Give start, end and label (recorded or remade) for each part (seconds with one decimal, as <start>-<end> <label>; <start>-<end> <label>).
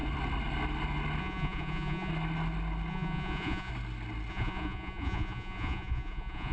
0.0-1.2 recorded; 1.2-2.1 remade; 2.1-2.9 recorded; 2.9-3.7 remade; 3.7-4.3 recorded; 4.3-6.5 remade